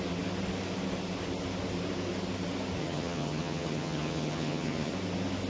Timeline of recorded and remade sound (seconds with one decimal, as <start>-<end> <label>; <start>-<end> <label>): 0.0-2.8 recorded; 2.8-4.9 remade; 4.9-5.5 recorded